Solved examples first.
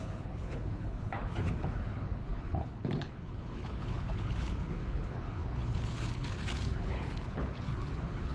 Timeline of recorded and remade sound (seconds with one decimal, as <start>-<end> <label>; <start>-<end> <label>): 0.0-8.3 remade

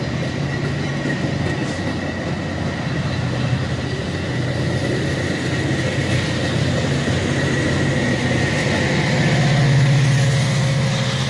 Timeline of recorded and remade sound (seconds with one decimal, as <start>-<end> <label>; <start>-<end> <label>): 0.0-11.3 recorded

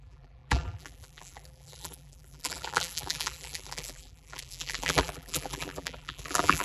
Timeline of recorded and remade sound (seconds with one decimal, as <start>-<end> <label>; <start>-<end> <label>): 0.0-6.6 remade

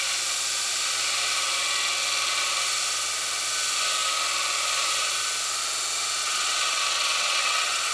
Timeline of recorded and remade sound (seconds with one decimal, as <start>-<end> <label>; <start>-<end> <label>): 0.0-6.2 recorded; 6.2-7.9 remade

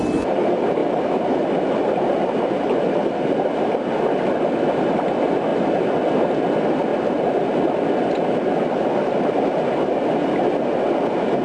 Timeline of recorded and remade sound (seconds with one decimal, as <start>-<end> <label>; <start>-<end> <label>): 0.0-11.4 recorded

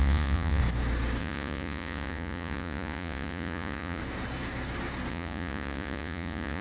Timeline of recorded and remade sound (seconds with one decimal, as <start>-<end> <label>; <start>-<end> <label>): 0.0-0.6 remade; 0.6-1.2 recorded; 1.2-4.0 remade; 4.0-5.1 recorded; 5.1-6.6 remade

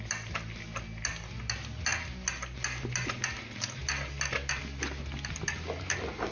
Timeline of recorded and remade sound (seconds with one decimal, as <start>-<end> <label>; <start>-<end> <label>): 0.0-6.3 recorded